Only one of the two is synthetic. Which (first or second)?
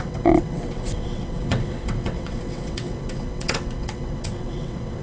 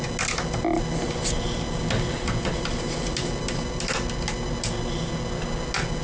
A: first